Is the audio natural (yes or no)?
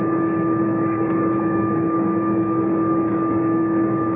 no